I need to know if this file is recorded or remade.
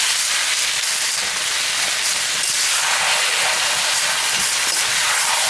recorded